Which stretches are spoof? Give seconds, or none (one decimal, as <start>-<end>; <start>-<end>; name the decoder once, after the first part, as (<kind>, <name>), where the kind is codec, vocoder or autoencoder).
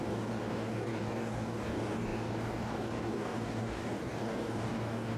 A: 0.0-5.2 (codec, DAC)